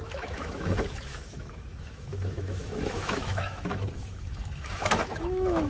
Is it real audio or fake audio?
fake